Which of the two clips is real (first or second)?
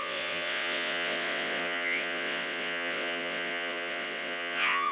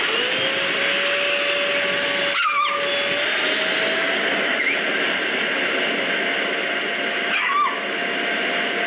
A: second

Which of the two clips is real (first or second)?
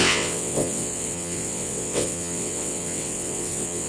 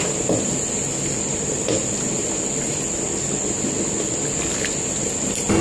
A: second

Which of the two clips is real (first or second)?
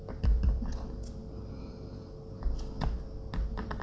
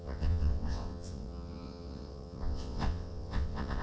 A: first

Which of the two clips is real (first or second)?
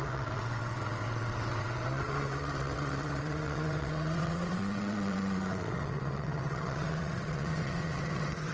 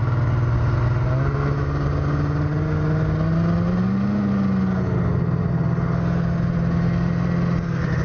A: second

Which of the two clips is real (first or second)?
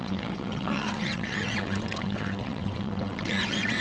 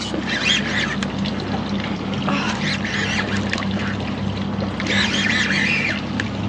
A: second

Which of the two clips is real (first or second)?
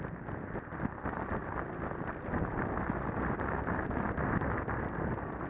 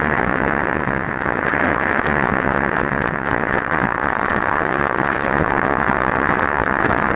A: first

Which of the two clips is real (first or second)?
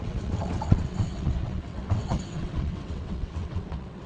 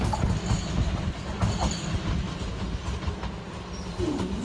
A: second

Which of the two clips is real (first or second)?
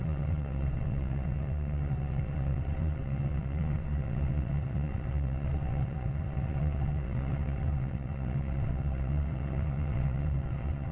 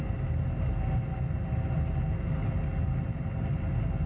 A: second